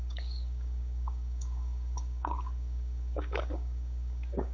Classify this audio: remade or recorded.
remade